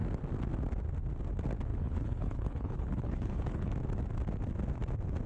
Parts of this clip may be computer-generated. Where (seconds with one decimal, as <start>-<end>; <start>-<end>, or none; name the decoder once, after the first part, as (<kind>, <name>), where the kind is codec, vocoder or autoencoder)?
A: 1.7-3.7 (codec, HILCodec)